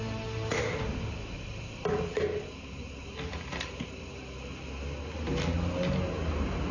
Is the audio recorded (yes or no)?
yes